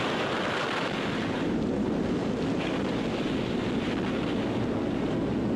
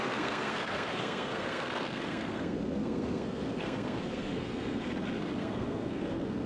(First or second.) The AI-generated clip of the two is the second